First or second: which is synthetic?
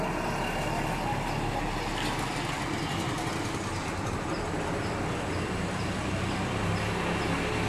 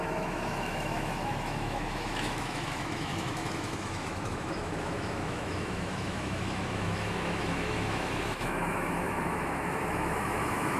second